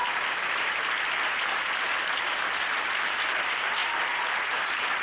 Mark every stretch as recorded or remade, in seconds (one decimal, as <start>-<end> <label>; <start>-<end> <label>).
0.0-5.0 recorded